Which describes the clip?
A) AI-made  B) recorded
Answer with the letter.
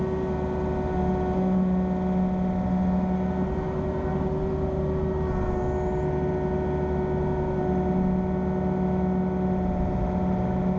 B